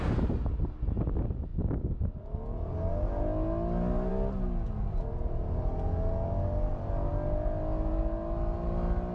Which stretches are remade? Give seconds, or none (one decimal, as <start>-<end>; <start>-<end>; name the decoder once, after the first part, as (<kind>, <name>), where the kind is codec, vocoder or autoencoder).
none